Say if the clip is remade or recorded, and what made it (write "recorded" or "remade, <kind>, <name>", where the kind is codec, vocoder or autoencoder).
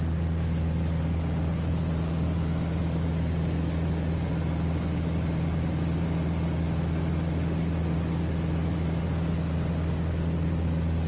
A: recorded